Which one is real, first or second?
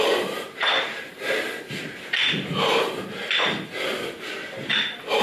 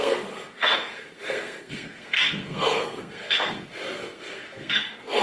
first